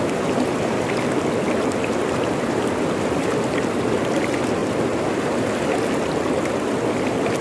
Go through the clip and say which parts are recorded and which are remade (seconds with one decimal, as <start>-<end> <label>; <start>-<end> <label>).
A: 0.0-7.4 recorded